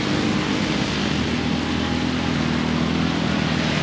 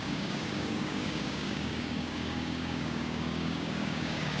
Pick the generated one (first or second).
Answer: second